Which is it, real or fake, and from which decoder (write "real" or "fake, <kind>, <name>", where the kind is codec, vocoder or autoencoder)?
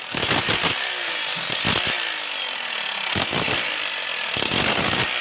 real